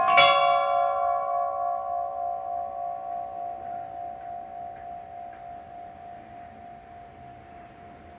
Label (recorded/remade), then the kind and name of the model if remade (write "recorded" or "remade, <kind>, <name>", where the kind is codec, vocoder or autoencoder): recorded